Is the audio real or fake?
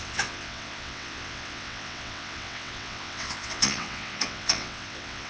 fake